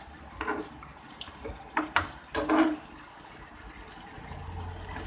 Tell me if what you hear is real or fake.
real